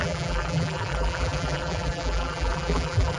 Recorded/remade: remade